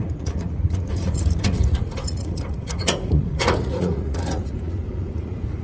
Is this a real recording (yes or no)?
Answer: no